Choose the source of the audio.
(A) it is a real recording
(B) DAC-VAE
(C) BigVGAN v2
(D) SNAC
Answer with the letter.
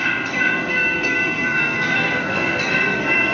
D